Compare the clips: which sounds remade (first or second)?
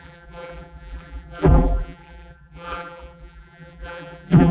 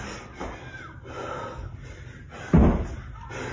first